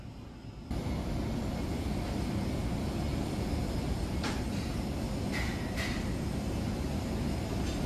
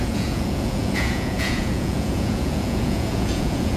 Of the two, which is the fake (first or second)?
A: second